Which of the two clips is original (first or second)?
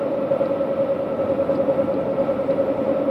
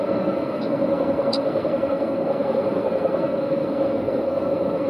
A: first